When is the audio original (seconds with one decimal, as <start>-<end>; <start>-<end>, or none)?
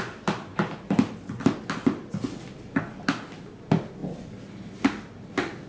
0.0-5.7